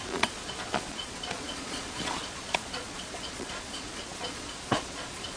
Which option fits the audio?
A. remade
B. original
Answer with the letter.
A